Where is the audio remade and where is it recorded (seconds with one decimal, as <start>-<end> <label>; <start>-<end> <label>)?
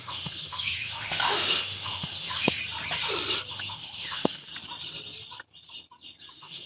0.0-2.6 remade; 2.6-3.5 recorded; 3.5-4.5 remade; 4.5-6.3 recorded; 6.3-6.7 remade